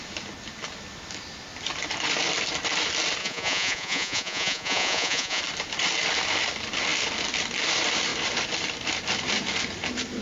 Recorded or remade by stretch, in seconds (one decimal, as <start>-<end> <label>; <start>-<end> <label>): 0.0-3.2 recorded; 3.2-5.4 remade; 5.4-10.2 recorded